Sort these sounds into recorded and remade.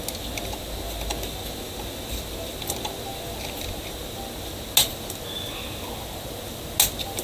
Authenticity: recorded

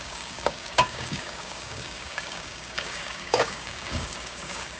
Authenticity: remade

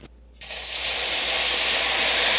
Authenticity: recorded